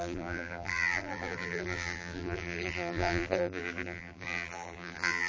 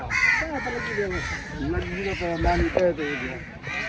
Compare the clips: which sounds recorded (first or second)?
second